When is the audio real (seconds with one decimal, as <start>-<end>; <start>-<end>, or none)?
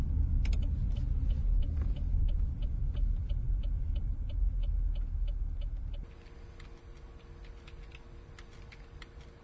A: 0.0-9.4